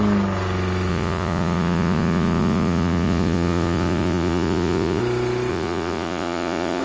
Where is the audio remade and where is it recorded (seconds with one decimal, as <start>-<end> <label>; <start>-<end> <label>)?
0.0-0.9 recorded; 0.9-5.0 remade; 5.0-5.5 recorded; 5.5-6.8 remade